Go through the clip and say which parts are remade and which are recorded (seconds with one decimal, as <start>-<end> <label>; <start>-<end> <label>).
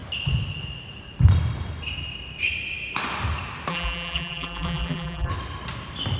0.0-3.7 recorded; 3.7-5.3 remade; 5.3-6.2 recorded